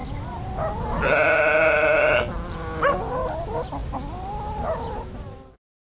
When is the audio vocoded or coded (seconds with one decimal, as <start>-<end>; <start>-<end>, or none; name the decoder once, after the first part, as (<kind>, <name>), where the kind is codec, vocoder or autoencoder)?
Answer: none